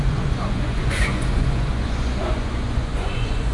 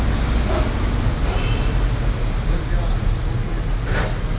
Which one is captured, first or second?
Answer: second